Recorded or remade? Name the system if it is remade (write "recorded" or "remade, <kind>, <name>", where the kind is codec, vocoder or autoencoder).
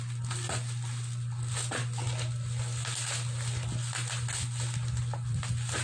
recorded